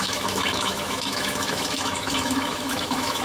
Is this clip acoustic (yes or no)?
no